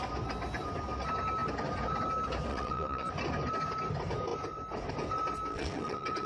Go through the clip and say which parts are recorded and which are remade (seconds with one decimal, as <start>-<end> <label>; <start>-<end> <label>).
0.0-2.5 recorded; 2.5-3.1 remade; 3.1-5.5 recorded; 5.5-6.3 remade